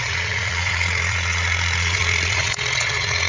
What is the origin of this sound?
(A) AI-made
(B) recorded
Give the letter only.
A